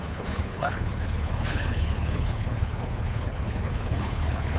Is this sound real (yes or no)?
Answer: no